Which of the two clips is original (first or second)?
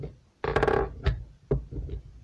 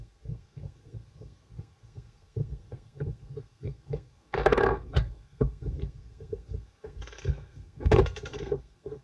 first